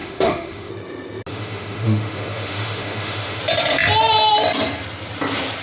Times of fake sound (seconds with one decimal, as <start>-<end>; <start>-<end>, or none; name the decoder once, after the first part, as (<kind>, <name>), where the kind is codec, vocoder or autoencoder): 0.0-0.7 (autoencoder, DAC-VAE); 1.3-3.4